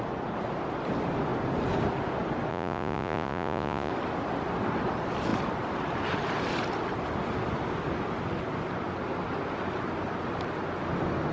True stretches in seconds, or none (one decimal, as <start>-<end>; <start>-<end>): 0.0-2.5; 3.9-11.3